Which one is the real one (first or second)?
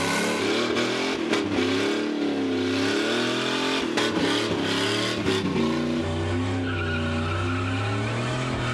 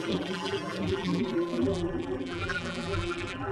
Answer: first